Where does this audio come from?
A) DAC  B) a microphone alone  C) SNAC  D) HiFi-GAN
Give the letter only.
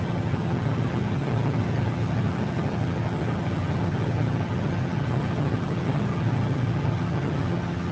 D